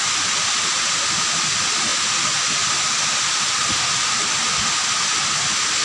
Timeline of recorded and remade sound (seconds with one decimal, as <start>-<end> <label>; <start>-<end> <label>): 0.0-5.8 recorded